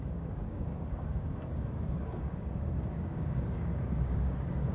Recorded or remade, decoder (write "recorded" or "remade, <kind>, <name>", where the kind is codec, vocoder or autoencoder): remade, codec, DAC